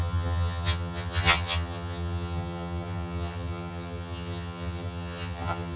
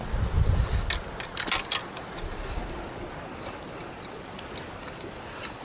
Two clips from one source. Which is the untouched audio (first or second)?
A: second